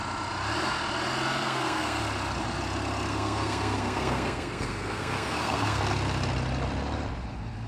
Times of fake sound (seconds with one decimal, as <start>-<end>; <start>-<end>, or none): 1.4-2.0; 3.1-5.8